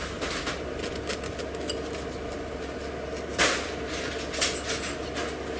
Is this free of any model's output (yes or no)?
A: yes